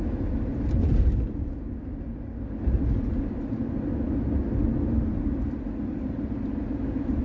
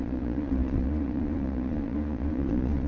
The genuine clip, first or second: first